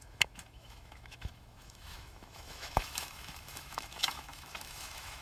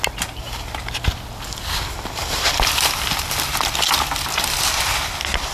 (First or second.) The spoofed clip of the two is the first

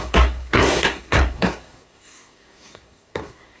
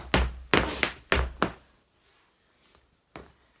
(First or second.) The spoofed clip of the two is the first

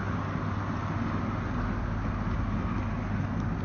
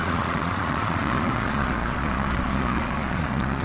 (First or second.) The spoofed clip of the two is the second